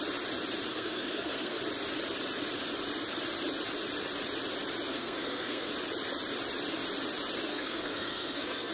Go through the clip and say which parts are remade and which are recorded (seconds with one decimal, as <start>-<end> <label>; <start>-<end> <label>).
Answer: 0.0-0.7 recorded; 0.7-1.6 remade; 1.6-4.9 recorded; 4.9-5.7 remade; 5.7-7.5 recorded; 7.5-8.7 remade